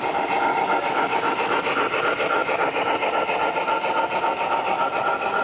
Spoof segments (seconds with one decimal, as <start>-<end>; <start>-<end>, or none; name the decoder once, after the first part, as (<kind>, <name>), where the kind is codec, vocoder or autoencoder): none